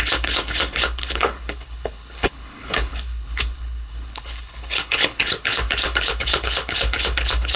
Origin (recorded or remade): remade